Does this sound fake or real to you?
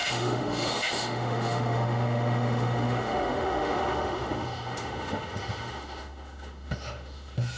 fake